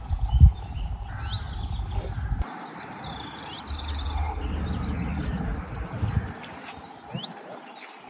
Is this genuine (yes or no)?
yes